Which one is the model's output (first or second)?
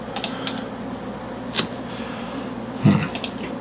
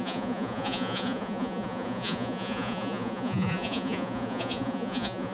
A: second